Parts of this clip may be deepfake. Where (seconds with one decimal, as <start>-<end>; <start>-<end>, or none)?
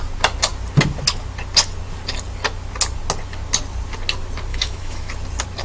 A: 4.5-5.1